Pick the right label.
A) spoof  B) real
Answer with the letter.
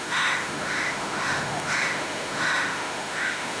A